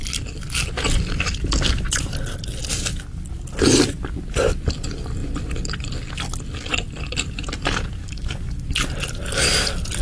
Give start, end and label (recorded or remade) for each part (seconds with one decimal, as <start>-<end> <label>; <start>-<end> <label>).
0.0-8.0 recorded; 8.0-8.6 remade; 8.6-10.0 recorded